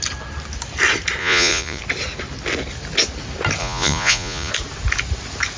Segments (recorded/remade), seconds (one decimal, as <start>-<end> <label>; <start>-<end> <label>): 0.0-1.2 recorded; 1.2-1.8 remade; 1.8-3.6 recorded; 3.6-4.5 remade; 4.5-5.6 recorded